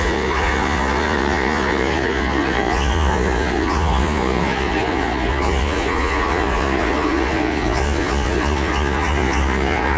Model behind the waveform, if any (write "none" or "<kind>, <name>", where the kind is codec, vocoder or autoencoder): vocoder, Vocos